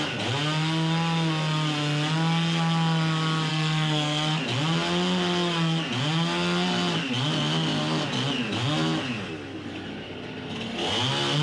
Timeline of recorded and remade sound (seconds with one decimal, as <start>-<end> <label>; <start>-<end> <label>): 0.0-3.5 recorded; 3.5-4.4 remade; 4.4-11.4 recorded